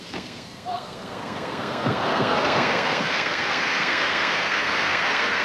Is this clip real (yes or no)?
no